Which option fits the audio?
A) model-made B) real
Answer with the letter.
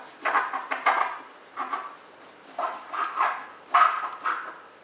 B